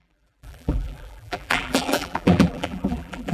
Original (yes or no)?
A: no